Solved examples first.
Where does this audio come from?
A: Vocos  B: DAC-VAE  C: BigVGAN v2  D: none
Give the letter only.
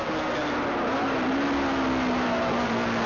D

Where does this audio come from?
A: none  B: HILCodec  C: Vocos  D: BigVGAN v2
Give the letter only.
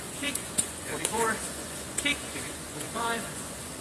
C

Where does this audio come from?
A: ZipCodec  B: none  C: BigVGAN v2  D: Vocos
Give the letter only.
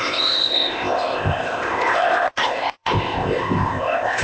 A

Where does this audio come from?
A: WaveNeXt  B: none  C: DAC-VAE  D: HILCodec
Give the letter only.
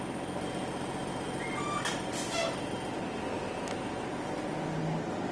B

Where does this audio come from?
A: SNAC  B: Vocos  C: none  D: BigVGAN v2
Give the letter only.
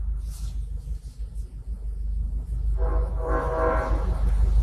C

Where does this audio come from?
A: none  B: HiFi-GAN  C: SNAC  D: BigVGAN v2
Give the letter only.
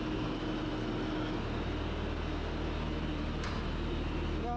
A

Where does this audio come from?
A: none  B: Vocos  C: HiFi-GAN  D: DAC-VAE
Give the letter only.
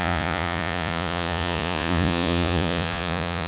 B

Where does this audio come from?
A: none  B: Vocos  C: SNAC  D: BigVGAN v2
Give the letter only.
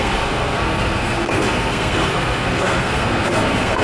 C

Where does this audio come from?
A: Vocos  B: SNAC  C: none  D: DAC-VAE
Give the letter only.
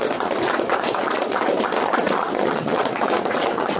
A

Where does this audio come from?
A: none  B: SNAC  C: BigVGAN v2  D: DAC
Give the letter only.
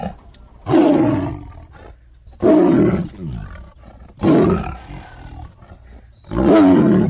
A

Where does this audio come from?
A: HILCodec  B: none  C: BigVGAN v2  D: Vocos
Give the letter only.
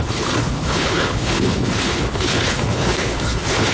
A